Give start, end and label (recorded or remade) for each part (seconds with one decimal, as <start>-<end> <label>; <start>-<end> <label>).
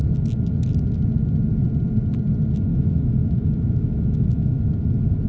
0.0-2.7 recorded; 2.7-4.6 remade; 4.6-5.3 recorded